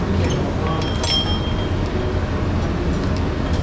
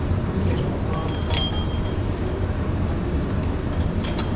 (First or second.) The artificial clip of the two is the second